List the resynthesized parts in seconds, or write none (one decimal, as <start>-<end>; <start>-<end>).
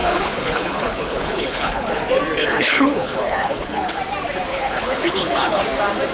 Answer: 0.0-2.0; 2.4-4.0; 4.5-5.6